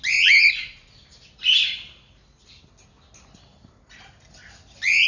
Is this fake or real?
real